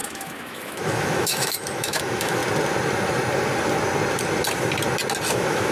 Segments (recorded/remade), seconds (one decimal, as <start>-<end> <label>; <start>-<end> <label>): 0.0-2.4 remade; 2.4-5.3 recorded; 5.3-5.7 remade